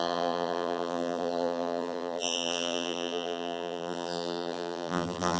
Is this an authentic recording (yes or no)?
no